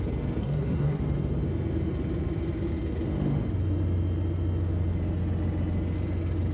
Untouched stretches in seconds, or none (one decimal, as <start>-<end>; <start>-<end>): 0.0-0.4; 1.0-6.5